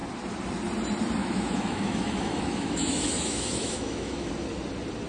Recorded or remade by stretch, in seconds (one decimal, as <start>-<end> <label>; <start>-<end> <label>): 0.0-1.2 recorded; 1.2-4.3 remade; 4.3-5.1 recorded